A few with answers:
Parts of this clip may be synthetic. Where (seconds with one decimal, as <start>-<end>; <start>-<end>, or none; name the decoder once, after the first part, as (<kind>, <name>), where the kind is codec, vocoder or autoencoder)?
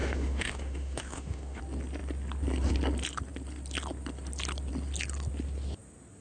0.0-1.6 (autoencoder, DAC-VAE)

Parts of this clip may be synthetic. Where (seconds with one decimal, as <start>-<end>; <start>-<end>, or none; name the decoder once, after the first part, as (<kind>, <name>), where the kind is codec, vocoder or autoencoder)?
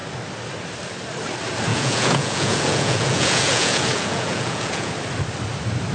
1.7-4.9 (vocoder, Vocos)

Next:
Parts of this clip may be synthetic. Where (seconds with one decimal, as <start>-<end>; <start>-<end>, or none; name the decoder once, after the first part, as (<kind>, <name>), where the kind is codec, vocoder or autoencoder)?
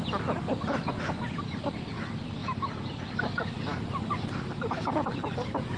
none